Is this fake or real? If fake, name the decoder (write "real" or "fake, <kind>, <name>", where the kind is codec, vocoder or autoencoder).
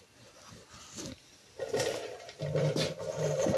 real